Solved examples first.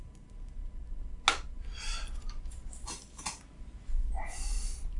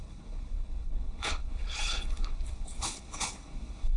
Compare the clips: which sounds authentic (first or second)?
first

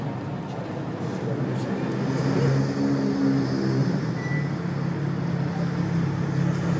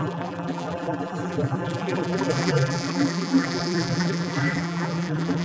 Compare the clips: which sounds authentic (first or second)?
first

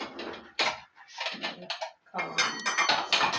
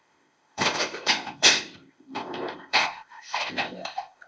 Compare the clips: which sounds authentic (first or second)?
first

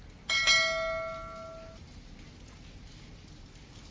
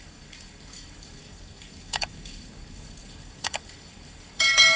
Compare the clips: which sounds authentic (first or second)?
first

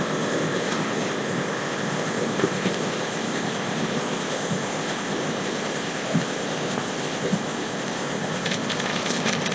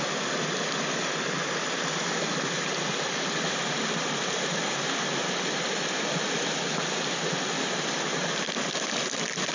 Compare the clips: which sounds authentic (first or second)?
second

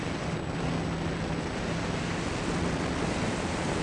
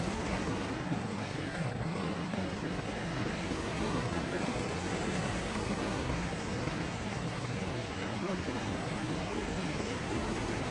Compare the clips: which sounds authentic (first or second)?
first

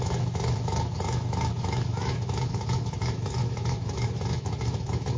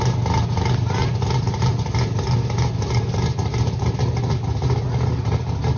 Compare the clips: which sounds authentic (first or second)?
second